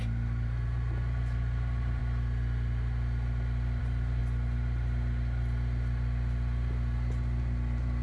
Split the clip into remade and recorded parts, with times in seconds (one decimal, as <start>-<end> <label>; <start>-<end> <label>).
0.0-2.0 remade; 2.0-3.8 recorded; 3.8-4.2 remade; 4.2-7.4 recorded; 7.4-8.0 remade